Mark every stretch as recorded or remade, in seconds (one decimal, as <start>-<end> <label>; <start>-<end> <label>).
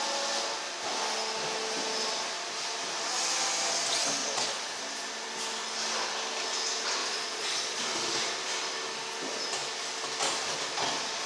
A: 0.0-4.2 recorded; 4.2-4.8 remade; 4.8-7.0 recorded; 7.0-7.8 remade; 7.8-11.3 recorded